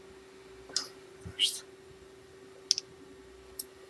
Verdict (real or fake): real